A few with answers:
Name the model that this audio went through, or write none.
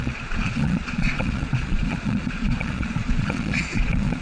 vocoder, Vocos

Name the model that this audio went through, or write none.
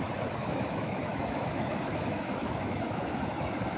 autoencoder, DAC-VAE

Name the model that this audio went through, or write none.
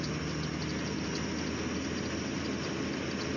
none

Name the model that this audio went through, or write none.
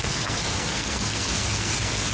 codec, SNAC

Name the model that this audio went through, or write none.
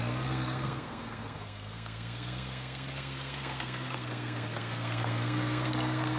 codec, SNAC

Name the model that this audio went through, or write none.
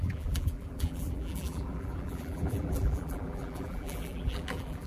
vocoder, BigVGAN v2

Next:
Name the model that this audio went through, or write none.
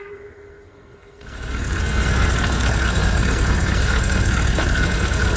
codec, SNAC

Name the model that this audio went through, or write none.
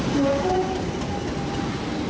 none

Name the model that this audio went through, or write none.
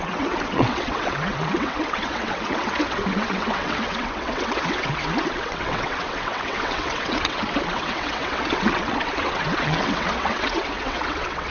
vocoder, WaveNeXt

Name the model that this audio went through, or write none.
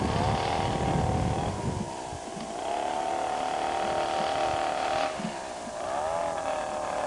none